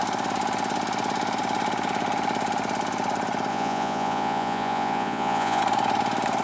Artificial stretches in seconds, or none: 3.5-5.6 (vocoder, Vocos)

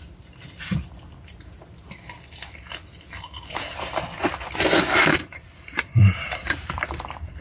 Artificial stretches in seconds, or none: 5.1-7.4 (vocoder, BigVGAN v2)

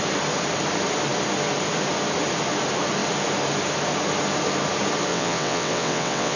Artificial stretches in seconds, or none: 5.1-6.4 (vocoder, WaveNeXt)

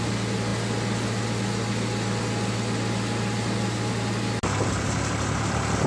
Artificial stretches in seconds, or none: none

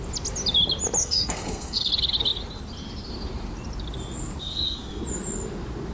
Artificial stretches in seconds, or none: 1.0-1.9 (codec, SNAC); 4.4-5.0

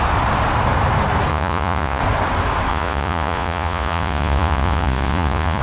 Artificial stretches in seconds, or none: 1.3-2.0 (vocoder, Vocos); 2.7-5.6

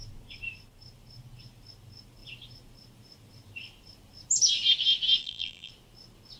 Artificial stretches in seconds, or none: 5.2-5.7 (vocoder, BigVGAN v2)

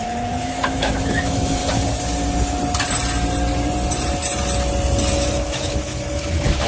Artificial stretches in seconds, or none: 0.0-1.6 (autoencoder, DAC-VAE); 5.1-6.7